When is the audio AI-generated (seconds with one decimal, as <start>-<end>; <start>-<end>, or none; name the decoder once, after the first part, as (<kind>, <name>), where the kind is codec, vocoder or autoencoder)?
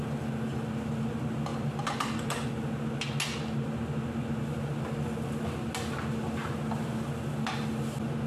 1.5-2.5 (vocoder, BigVGAN v2)